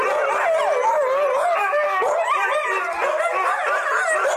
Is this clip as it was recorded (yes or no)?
yes